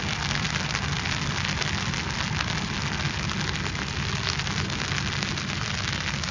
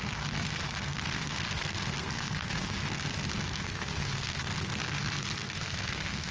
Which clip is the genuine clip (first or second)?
first